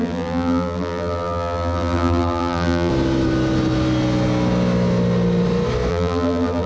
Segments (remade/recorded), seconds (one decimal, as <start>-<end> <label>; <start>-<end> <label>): 0.0-2.9 remade; 2.9-5.9 recorded; 5.9-6.7 remade